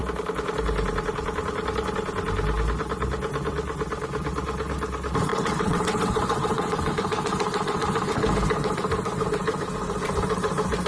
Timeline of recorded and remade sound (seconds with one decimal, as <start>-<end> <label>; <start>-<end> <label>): 0.0-5.3 recorded; 5.3-6.9 remade; 6.9-10.9 recorded